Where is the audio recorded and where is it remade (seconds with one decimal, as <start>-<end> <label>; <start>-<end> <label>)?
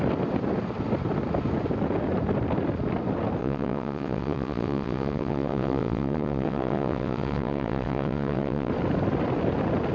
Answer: 0.0-3.4 recorded; 3.4-8.7 remade; 8.7-9.9 recorded